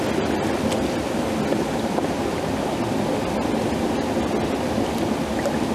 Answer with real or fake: real